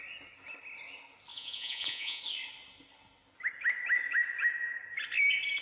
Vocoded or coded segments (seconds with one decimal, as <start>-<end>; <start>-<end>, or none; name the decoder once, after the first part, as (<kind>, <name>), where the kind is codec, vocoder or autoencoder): 1.3-2.2 (vocoder, Vocos)